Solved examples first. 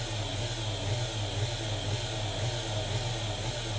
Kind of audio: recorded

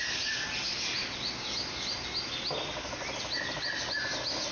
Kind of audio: recorded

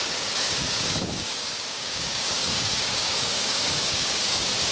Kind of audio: remade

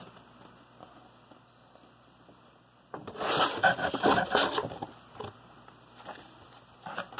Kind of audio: recorded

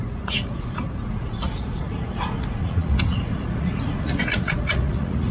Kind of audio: remade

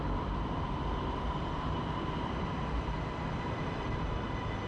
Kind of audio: remade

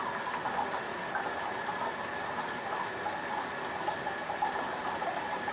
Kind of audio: recorded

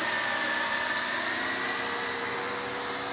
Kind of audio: recorded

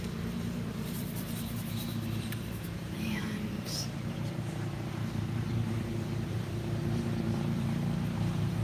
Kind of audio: remade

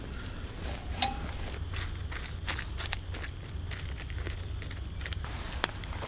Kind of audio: recorded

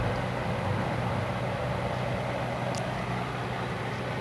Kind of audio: recorded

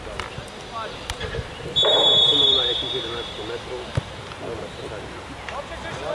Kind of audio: recorded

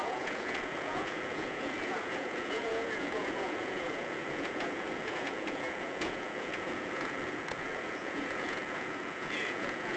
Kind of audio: remade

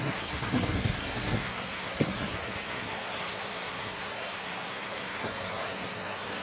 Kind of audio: remade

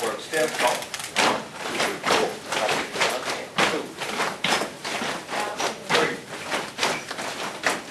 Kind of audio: recorded